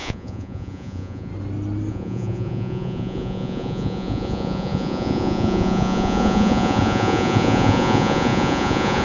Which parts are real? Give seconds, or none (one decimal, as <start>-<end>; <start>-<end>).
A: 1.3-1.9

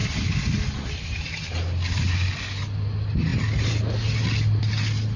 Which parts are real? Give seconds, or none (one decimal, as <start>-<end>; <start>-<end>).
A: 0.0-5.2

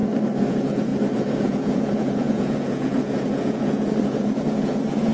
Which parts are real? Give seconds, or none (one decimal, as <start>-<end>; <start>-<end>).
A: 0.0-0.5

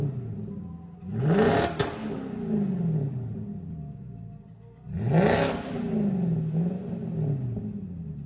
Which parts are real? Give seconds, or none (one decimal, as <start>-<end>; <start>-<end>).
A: 0.0-8.3

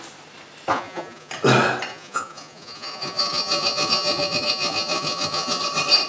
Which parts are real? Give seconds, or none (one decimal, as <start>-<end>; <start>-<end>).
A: 0.0-0.7; 1.3-1.9; 5.6-6.1

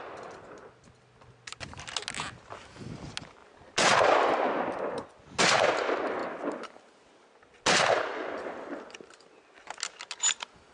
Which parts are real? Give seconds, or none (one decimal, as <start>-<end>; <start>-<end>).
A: 0.0-10.7

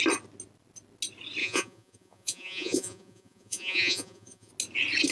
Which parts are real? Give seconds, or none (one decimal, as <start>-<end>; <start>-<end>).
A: 0.0-1.4; 4.5-5.1

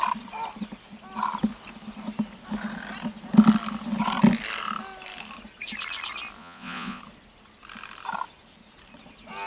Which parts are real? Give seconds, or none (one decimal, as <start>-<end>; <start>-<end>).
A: 0.0-6.4; 7.0-9.5